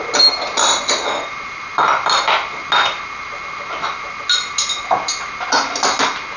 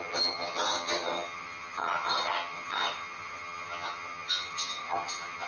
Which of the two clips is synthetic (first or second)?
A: second